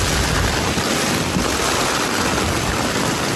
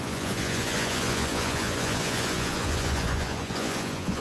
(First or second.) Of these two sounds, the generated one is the second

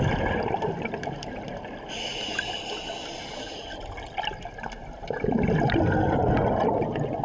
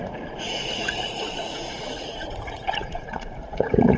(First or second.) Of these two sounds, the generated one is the second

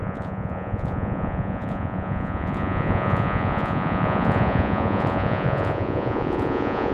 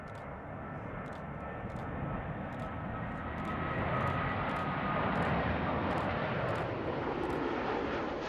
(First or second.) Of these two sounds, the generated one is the first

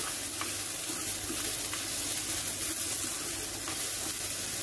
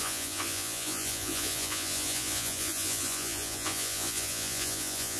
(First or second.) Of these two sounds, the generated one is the second